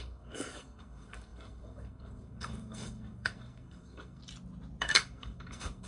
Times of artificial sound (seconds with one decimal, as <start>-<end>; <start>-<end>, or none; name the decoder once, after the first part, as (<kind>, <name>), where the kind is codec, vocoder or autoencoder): 0.0-4.2 (codec, SNAC); 4.8-5.9